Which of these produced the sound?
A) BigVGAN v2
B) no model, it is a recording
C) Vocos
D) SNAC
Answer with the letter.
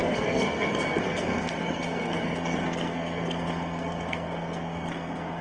D